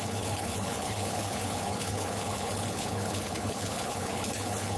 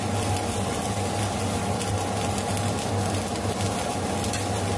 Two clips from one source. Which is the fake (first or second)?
first